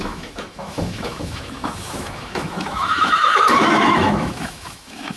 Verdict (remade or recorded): remade